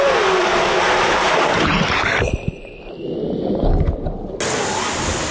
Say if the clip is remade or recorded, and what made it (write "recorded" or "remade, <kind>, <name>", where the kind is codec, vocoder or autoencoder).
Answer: recorded